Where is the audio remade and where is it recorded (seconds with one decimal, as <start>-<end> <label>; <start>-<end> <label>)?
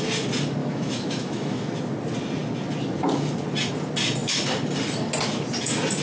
0.0-0.6 recorded; 0.6-1.7 remade; 1.7-6.0 recorded